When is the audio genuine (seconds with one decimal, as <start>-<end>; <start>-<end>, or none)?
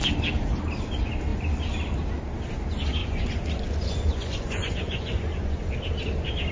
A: 0.0-3.0; 5.7-6.5